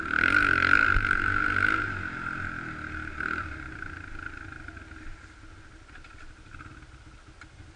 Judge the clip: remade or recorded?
recorded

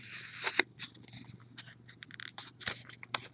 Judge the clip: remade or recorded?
recorded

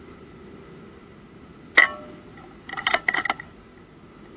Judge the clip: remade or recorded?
recorded